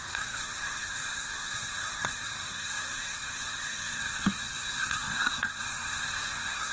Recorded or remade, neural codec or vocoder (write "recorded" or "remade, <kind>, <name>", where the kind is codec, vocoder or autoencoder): remade, codec, SNAC